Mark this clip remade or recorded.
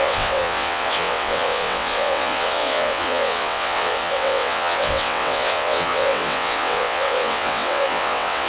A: remade